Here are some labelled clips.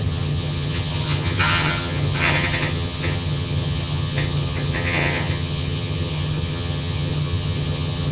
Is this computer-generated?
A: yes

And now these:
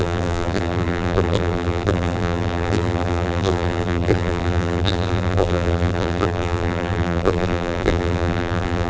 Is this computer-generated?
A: yes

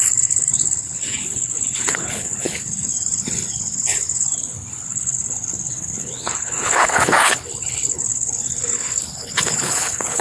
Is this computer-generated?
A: yes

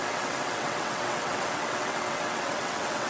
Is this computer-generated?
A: yes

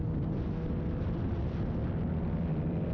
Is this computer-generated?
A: no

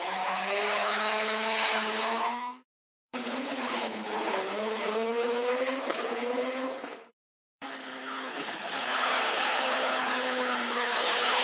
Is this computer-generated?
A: yes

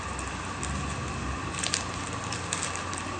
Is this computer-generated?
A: no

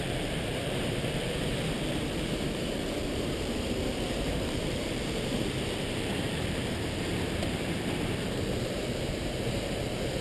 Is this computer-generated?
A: yes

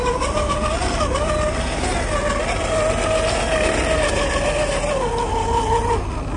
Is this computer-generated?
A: no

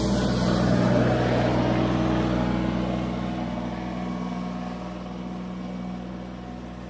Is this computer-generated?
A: no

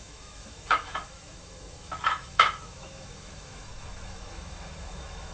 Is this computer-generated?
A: yes